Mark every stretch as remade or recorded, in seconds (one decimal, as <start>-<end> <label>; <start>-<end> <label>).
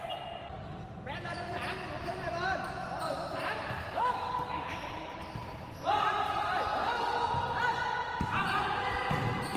0.0-3.8 recorded; 3.8-5.3 remade; 5.3-6.8 recorded; 6.8-7.3 remade; 7.3-9.6 recorded